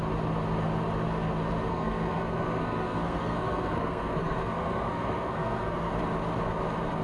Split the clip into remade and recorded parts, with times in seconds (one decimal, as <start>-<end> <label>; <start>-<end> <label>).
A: 0.0-1.7 recorded; 1.7-5.9 remade; 5.9-7.0 recorded